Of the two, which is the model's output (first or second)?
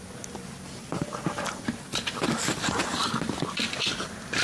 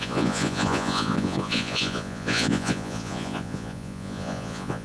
second